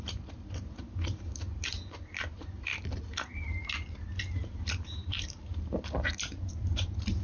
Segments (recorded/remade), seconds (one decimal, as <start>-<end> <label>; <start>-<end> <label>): 0.0-1.3 remade; 1.3-2.3 recorded; 2.3-2.7 remade; 2.7-4.3 recorded; 4.3-7.2 remade